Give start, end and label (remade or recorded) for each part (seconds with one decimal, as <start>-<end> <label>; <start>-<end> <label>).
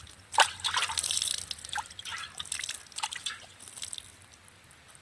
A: 0.0-5.0 recorded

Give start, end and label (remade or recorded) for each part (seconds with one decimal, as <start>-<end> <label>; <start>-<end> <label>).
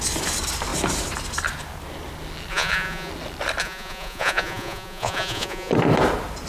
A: 0.0-2.5 recorded; 2.5-3.1 remade; 3.1-3.6 recorded; 3.6-5.7 remade; 5.7-6.5 recorded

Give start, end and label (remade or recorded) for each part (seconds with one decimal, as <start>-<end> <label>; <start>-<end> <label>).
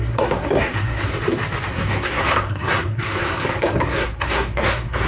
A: 0.0-1.1 remade; 1.1-1.7 recorded; 1.7-5.1 remade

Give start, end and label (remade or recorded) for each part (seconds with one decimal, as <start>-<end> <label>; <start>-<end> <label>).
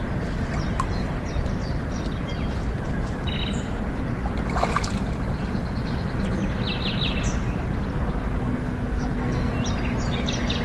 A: 0.0-8.4 recorded; 8.4-9.5 remade; 9.5-10.6 recorded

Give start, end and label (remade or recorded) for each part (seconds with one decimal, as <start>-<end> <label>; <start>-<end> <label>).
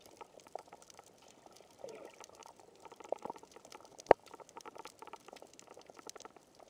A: 0.0-2.4 recorded; 2.4-3.4 remade; 3.4-6.7 recorded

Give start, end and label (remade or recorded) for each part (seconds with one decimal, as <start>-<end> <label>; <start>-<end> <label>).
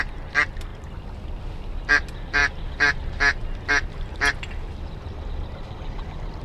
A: 0.0-6.4 recorded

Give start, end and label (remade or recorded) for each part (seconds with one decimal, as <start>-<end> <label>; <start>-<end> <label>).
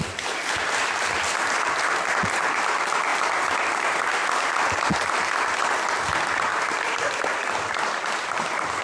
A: 0.0-6.5 recorded; 6.5-7.2 remade; 7.2-8.8 recorded